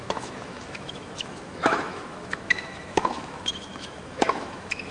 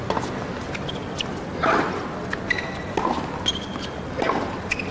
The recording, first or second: second